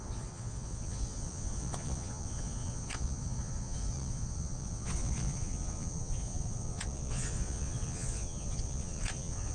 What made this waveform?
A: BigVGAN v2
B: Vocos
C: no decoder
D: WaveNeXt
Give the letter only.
B